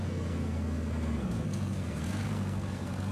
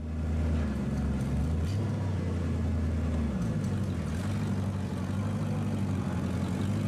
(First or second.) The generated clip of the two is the first